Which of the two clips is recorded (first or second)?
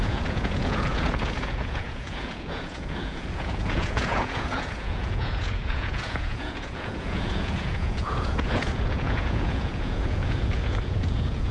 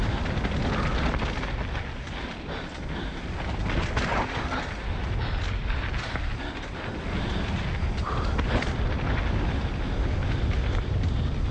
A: second